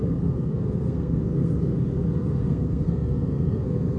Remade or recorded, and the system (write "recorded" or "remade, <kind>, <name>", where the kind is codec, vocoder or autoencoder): remade, codec, SNAC